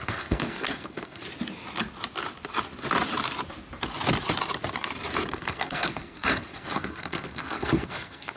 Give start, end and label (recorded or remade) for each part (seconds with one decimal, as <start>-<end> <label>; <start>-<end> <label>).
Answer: 0.0-1.2 remade; 1.2-5.3 recorded; 5.3-8.4 remade